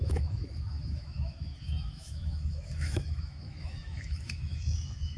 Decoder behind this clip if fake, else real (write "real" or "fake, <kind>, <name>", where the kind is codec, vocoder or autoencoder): fake, autoencoder, DAC-VAE